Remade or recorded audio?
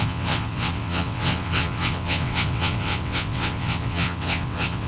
remade